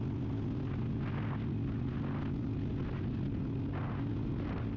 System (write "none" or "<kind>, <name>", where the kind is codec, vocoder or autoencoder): none